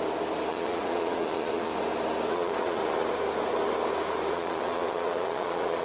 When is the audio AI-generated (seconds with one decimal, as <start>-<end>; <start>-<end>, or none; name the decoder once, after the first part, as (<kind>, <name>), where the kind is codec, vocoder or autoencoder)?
0.5-1.7 (vocoder, Vocos); 2.3-2.8; 4.3-5.8